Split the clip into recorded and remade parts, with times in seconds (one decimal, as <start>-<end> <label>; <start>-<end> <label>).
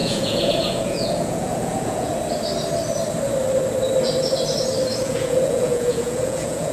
0.0-2.1 remade; 2.1-5.0 recorded; 5.0-6.7 remade